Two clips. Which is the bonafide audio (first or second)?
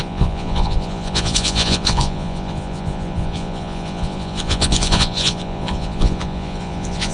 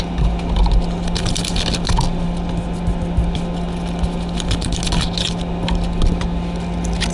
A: second